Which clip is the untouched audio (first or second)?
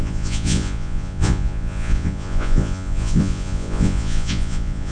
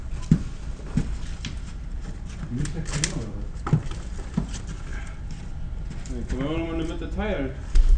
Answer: second